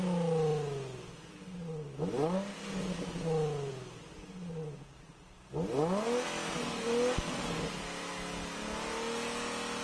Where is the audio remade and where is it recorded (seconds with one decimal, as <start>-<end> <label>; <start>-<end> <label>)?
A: 0.0-9.8 recorded